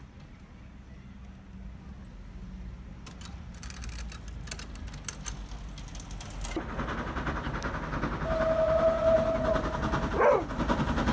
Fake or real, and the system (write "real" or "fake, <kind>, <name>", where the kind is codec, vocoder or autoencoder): real